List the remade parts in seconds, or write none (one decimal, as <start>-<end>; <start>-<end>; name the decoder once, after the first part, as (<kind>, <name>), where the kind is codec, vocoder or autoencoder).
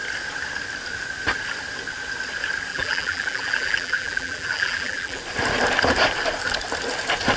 2.7-5.2 (vocoder, BigVGAN v2)